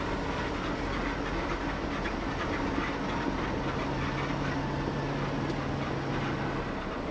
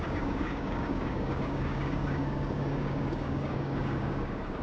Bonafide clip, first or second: first